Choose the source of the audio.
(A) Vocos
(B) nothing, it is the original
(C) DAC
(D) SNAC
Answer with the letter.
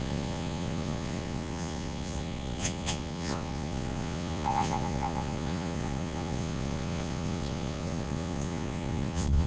A